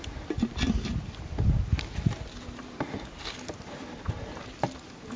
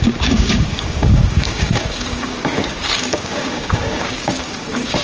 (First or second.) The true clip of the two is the first